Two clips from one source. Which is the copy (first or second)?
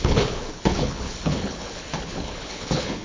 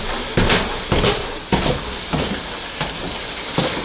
first